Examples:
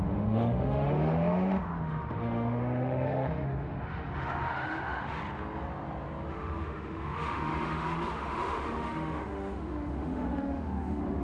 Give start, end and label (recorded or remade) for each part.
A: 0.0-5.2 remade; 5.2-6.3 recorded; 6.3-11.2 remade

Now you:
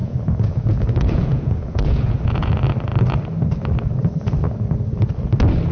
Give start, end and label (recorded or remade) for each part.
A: 0.0-2.5 remade; 2.5-5.7 recorded

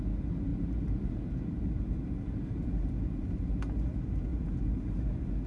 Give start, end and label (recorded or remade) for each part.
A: 0.0-0.5 recorded; 0.5-3.6 remade; 3.6-4.3 recorded; 4.3-5.5 remade

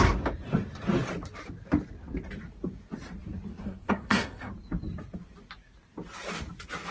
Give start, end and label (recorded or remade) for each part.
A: 0.0-3.6 recorded; 3.6-4.5 remade; 4.5-6.9 recorded

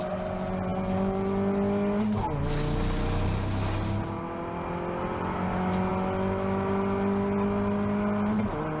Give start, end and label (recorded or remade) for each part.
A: 0.0-8.8 recorded

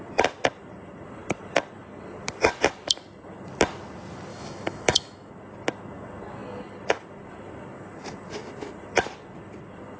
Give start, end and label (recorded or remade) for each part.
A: 0.0-4.3 recorded; 4.3-5.3 remade; 5.3-10.0 recorded

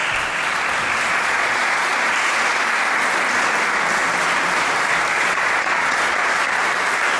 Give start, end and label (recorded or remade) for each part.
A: 0.0-1.1 recorded; 1.1-1.9 remade; 1.9-5.2 recorded; 5.2-6.2 remade; 6.2-7.2 recorded